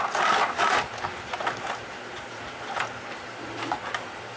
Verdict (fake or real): real